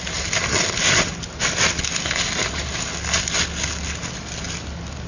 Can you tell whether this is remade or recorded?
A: recorded